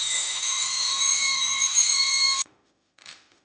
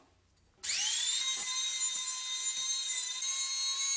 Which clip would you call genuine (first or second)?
second